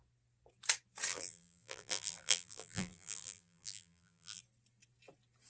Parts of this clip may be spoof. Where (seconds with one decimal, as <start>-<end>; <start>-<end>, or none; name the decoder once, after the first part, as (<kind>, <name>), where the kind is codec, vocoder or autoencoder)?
1.1-4.4 (vocoder, BigVGAN v2)